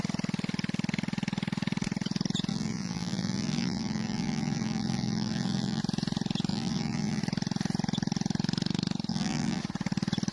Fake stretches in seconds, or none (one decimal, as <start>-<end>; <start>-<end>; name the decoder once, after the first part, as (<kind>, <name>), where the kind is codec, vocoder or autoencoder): 2.5-5.8 (vocoder, BigVGAN v2); 6.5-7.2; 9.1-9.6